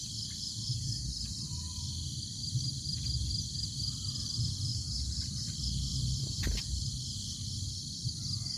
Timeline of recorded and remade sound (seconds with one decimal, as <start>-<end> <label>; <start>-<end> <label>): 0.0-4.7 recorded; 4.7-5.4 remade; 5.4-5.9 recorded; 5.9-6.4 remade; 6.4-8.6 recorded

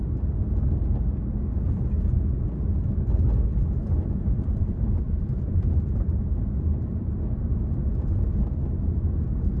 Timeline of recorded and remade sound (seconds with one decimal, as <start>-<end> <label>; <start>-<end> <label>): 0.0-3.5 recorded; 3.5-7.1 remade; 7.1-9.6 recorded

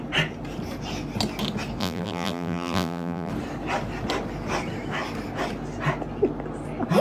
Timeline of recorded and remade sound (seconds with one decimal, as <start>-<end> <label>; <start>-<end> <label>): 0.0-1.8 recorded; 1.8-3.3 remade; 3.3-7.0 recorded

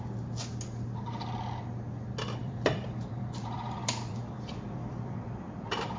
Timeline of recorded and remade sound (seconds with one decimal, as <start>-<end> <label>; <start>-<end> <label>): 0.0-2.4 recorded; 2.4-6.0 remade

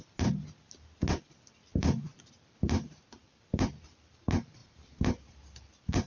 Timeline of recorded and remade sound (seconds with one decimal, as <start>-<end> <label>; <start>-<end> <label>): 0.0-1.7 recorded; 1.7-2.2 remade; 2.2-4.6 recorded; 4.6-5.3 remade; 5.3-6.1 recorded

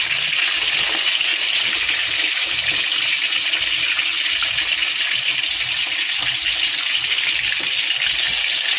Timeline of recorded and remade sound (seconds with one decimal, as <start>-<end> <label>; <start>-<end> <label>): 0.0-8.8 recorded